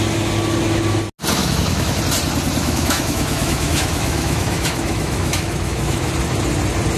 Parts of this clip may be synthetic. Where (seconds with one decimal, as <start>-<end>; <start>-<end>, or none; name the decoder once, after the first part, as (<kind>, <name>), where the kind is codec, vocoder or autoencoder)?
1.4-2.0 (autoencoder, DAC-VAE); 2.6-6.1